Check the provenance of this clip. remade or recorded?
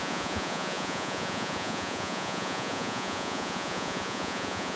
remade